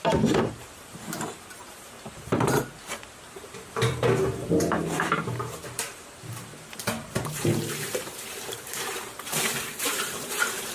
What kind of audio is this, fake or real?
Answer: fake